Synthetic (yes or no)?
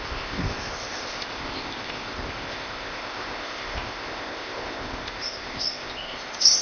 yes